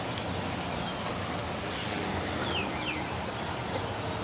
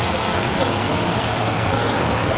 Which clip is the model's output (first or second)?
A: second